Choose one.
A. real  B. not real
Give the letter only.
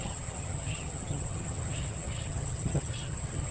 B